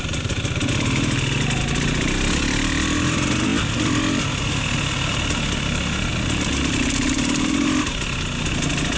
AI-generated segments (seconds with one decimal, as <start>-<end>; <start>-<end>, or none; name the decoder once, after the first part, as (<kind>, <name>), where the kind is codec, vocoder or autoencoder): none

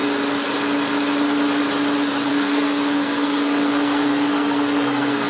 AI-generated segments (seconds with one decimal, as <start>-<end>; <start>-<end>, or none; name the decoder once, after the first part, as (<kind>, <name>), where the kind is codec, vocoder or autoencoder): 2.3-5.3 (codec, SNAC)

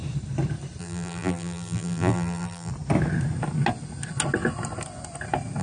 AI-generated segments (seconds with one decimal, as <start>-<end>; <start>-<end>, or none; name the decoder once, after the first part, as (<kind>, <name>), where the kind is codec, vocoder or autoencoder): 0.8-2.7 (vocoder, BigVGAN v2)

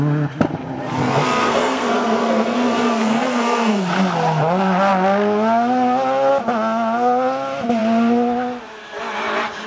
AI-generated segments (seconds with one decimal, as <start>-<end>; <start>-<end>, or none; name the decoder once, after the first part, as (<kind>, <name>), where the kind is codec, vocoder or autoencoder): 1.0-3.9 (codec, SNAC)